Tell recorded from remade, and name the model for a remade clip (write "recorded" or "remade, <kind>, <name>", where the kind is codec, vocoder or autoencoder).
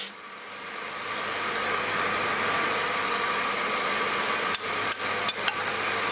recorded